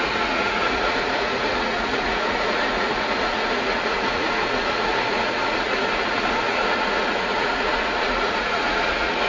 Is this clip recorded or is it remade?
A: remade